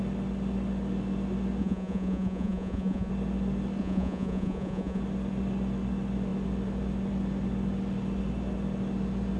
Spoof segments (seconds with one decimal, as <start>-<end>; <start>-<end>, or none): 1.6-3.1; 3.8-5.0